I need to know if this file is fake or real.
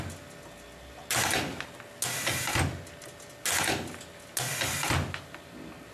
real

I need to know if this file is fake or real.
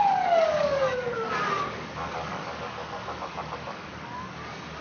fake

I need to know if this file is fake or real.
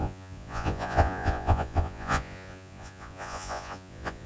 fake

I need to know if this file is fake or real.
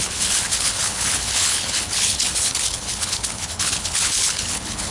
fake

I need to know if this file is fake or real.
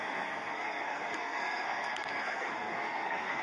fake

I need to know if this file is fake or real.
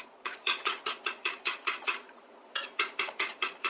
fake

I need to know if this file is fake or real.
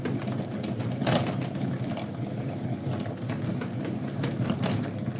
real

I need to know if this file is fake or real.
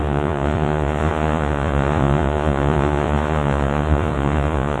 fake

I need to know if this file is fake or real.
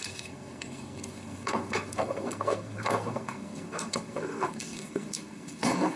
fake